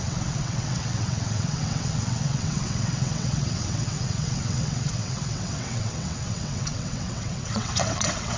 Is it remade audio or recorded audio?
remade